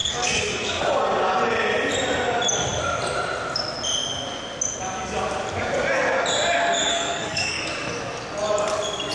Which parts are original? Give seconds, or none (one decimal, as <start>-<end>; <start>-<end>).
0.8-6.9; 7.6-9.1